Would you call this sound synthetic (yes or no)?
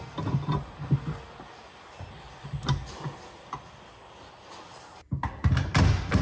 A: no